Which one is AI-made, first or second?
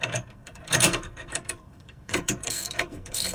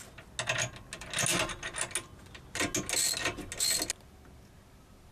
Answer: first